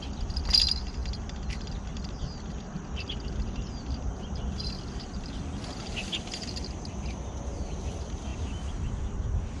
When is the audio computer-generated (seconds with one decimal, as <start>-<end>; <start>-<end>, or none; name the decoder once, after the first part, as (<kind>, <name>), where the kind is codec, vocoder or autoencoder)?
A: none